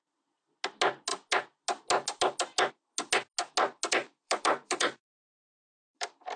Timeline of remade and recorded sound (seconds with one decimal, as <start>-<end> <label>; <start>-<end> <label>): 0.0-4.0 recorded; 4.0-6.4 remade